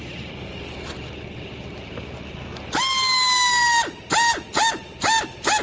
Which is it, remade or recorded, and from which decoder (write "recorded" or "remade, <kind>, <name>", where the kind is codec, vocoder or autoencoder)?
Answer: recorded